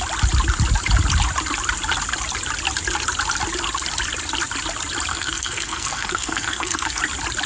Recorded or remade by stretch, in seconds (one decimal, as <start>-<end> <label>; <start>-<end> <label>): 0.0-5.1 recorded; 5.1-7.0 remade; 7.0-7.5 recorded